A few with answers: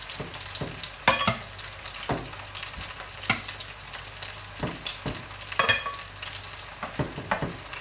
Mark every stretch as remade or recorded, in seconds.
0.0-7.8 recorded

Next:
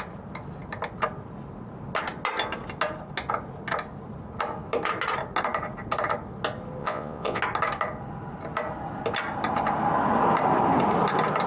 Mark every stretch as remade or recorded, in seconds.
0.0-6.8 recorded; 6.8-7.4 remade; 7.4-11.5 recorded

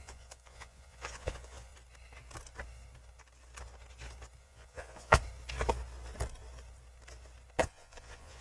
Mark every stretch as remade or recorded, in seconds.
0.0-1.7 remade; 1.7-4.4 recorded; 4.4-5.2 remade; 5.2-7.6 recorded; 7.6-8.4 remade